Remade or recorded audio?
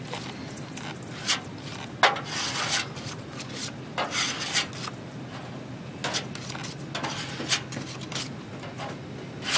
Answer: recorded